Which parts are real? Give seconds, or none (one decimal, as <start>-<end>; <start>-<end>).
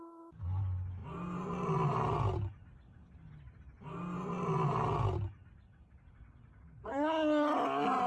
0.0-8.1